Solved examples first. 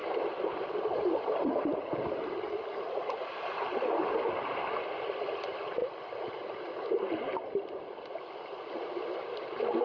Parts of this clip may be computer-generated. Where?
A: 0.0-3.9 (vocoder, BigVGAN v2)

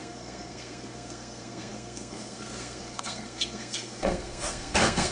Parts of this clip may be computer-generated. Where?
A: 0.0-5.1 (codec, SNAC)